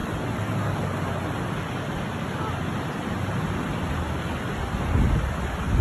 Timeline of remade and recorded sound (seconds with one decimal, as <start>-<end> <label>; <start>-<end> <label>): 0.0-5.8 recorded